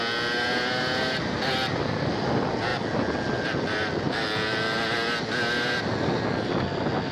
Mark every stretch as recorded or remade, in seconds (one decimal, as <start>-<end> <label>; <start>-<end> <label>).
0.0-7.1 recorded